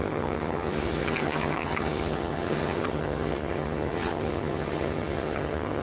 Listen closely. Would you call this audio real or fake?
fake